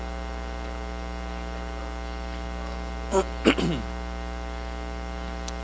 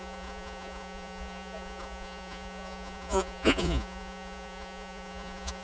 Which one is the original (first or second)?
first